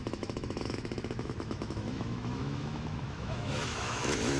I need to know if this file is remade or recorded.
remade